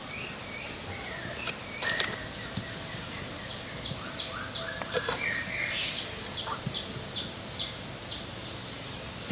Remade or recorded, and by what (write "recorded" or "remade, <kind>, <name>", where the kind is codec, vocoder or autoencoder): recorded